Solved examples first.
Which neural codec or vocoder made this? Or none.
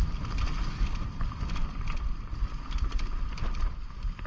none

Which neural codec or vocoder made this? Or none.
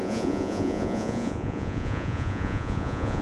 vocoder, Vocos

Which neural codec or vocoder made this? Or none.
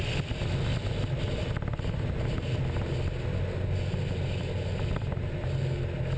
none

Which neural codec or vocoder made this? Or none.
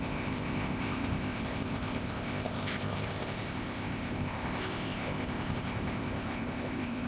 codec, ZipCodec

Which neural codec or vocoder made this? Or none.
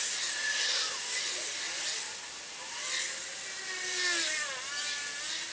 none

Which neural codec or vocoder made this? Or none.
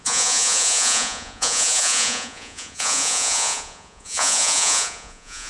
vocoder, Vocos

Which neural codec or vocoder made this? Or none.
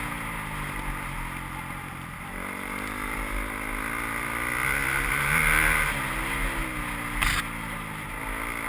none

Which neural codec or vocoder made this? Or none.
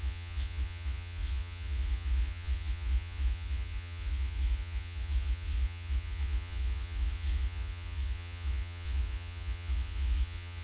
vocoder, Vocos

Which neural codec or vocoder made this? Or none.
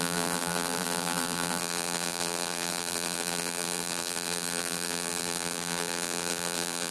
vocoder, BigVGAN v2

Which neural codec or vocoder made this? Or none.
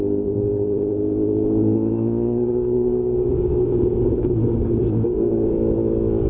codec, DAC